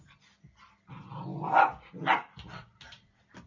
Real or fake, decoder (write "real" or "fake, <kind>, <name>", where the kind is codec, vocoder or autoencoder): real